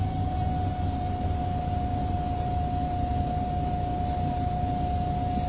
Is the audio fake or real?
real